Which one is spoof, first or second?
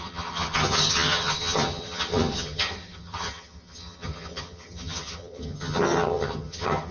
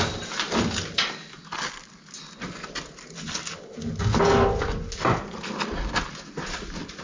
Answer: first